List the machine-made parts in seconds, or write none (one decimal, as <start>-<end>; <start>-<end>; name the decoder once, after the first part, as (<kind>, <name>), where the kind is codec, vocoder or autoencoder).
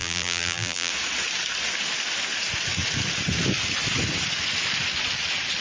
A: 0.0-0.9 (vocoder, BigVGAN v2)